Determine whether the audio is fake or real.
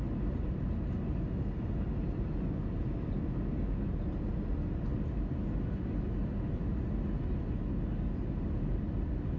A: real